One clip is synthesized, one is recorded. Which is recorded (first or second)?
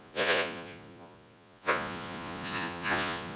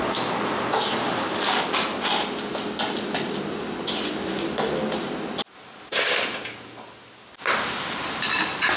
second